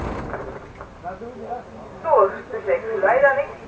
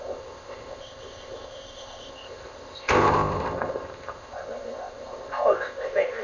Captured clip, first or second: first